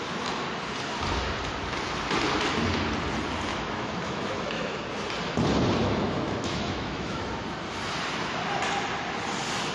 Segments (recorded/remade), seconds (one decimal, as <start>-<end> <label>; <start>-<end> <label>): 0.0-3.5 recorded; 3.5-4.8 remade; 4.8-5.8 recorded; 5.8-7.2 remade; 7.2-9.7 recorded

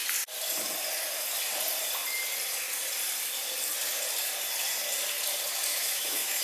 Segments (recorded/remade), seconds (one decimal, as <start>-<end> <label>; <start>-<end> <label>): 0.0-5.7 recorded; 5.7-6.4 remade

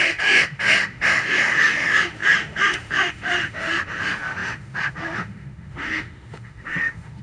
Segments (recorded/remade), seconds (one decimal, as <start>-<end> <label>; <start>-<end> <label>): 0.0-7.2 remade

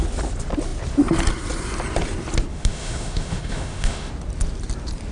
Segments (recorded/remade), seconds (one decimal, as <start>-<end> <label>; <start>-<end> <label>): 0.0-2.5 recorded; 2.5-4.1 remade; 4.1-5.1 recorded

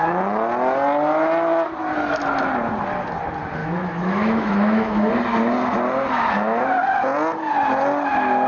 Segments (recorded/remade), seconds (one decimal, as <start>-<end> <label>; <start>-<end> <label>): 0.0-3.6 recorded; 3.6-5.1 remade; 5.1-8.5 recorded

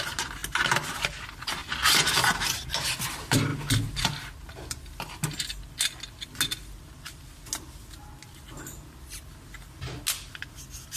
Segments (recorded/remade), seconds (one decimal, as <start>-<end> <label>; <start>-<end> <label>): 0.0-11.0 recorded

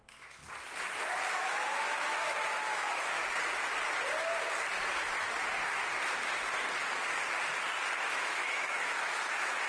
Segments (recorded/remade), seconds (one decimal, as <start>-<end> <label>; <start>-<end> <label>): 0.0-0.4 remade; 0.4-1.3 recorded; 1.3-3.2 remade; 3.2-8.0 recorded; 8.0-9.7 remade